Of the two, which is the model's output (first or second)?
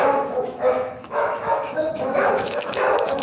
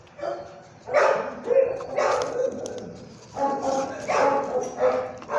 first